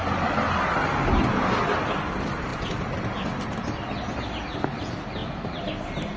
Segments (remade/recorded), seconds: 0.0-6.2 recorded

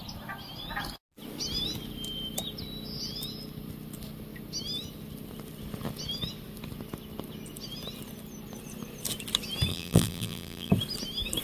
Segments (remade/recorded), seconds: 0.0-9.7 recorded; 9.7-10.7 remade; 10.7-11.4 recorded

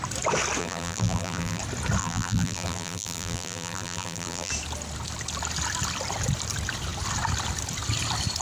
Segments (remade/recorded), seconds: 0.0-0.6 recorded; 0.6-1.6 remade; 1.6-2.0 recorded; 2.0-4.5 remade; 4.5-8.4 recorded

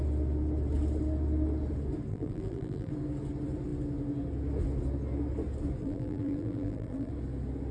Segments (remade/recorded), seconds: 0.0-2.1 recorded; 2.1-2.9 remade; 2.9-5.8 recorded; 5.8-7.1 remade; 7.1-7.7 recorded